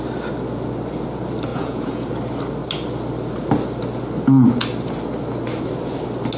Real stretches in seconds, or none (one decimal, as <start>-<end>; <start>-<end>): 0.0-1.5; 2.1-6.4